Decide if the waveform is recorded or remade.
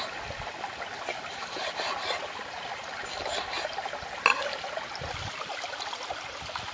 recorded